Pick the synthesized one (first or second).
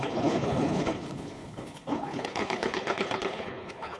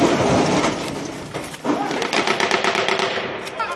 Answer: first